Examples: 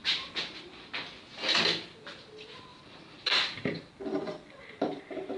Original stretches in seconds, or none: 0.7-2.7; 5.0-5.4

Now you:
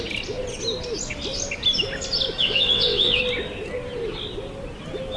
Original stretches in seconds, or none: 0.0-2.4; 3.2-5.2

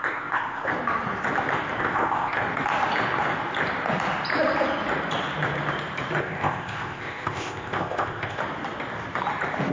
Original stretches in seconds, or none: 0.7-1.8; 2.4-6.2; 8.4-9.7

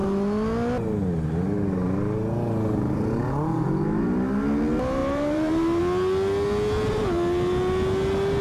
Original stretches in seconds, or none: 0.0-5.0; 5.8-8.4